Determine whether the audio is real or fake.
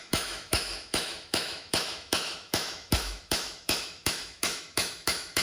fake